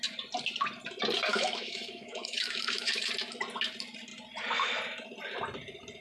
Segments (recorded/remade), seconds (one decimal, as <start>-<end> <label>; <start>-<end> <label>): 0.0-1.3 recorded; 1.3-3.1 remade; 3.1-6.0 recorded